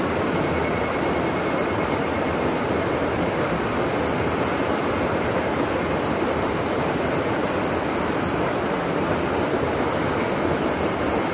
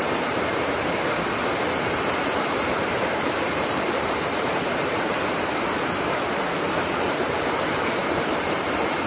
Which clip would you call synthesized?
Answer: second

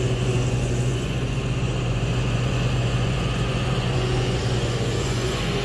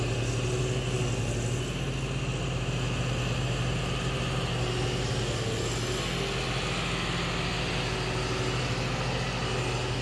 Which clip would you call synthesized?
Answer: first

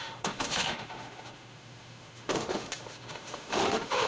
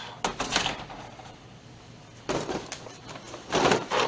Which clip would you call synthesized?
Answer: first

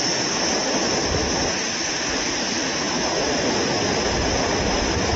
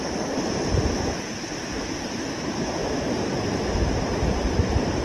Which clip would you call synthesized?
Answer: second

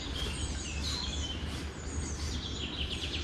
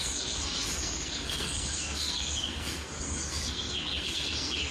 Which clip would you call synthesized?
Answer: second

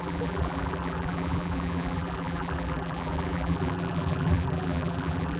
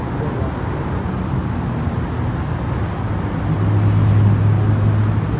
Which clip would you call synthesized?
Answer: first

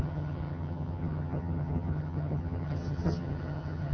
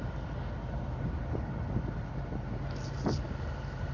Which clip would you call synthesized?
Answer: first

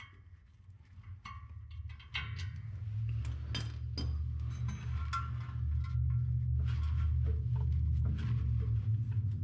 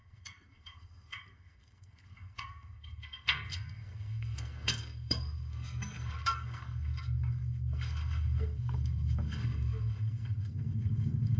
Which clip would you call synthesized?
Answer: second